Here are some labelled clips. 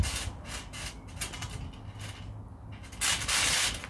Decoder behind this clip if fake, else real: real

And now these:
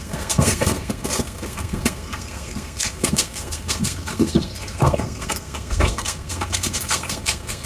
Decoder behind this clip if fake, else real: fake, codec, SNAC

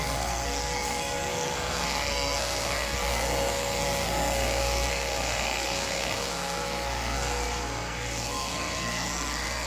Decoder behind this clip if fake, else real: fake, codec, SNAC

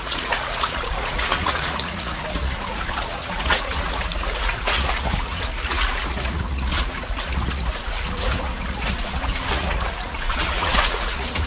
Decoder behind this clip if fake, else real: fake, vocoder, Vocos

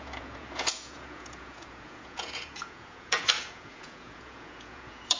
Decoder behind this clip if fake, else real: fake, vocoder, Vocos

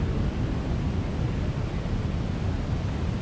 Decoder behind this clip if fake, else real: real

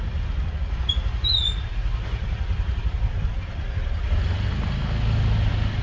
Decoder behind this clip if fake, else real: real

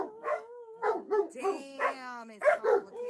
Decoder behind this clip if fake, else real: fake, codec, DAC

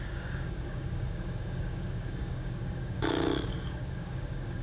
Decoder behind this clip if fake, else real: fake, codec, DAC